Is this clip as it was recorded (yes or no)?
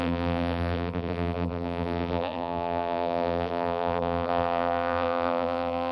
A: no